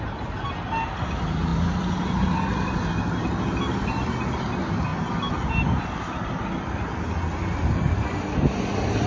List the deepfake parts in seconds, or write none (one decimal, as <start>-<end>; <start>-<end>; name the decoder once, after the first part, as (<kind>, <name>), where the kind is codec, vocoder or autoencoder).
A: none